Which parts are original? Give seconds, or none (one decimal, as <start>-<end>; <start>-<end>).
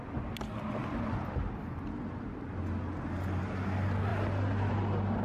0.0-5.2